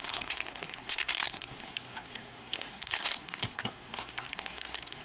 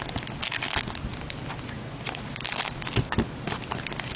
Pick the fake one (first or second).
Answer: first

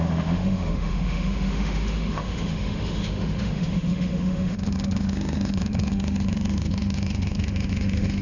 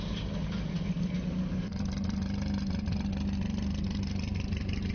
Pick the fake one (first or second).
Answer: first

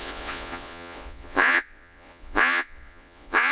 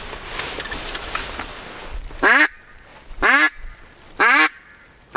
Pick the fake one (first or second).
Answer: first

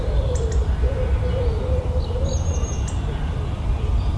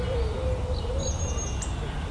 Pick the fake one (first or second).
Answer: first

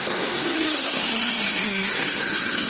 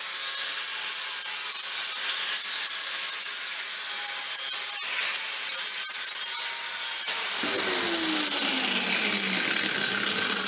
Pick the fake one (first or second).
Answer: first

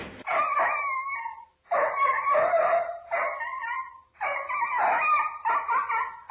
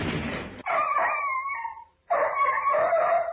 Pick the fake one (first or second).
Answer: second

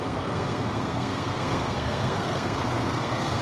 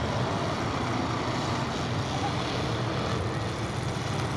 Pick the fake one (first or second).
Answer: first